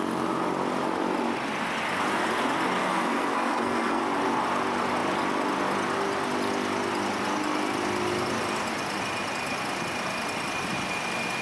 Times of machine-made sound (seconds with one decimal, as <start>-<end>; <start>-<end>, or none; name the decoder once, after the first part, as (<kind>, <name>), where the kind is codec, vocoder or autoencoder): 2.8-4.0 (codec, SNAC)